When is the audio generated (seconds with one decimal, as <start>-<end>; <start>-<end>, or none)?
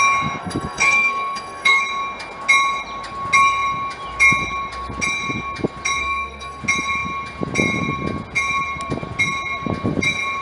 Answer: 0.4-1.8; 6.0-6.6